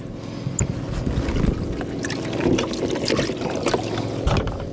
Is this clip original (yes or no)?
yes